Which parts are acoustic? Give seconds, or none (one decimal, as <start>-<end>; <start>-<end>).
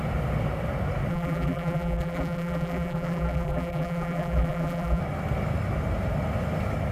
0.0-1.1; 5.0-6.9